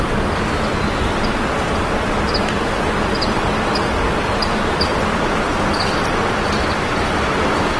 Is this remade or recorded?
recorded